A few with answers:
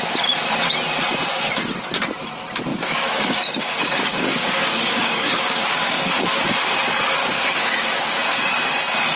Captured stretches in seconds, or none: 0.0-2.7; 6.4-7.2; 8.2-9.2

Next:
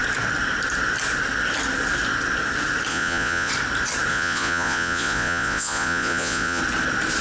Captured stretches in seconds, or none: 0.0-2.9; 3.5-4.1; 6.6-7.2